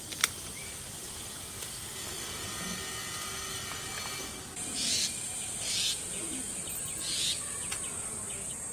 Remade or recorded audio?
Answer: recorded